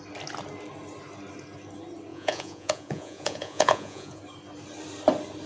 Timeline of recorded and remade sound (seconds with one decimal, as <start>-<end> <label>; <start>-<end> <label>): 0.0-2.1 recorded; 2.1-4.2 remade; 4.2-5.5 recorded